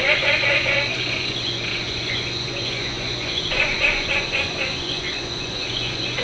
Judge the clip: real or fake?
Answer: fake